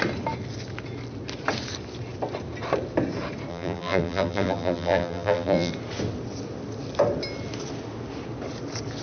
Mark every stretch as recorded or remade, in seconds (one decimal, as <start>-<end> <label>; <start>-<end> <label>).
0.0-3.5 recorded; 3.5-5.7 remade; 5.7-9.0 recorded